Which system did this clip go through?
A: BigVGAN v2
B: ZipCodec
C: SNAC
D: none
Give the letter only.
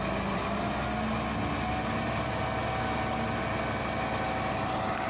D